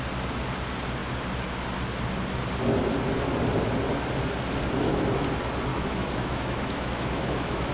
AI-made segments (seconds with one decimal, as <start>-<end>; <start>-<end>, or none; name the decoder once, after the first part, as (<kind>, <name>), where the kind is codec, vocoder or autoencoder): 5.7-7.7 (autoencoder, DAC-VAE)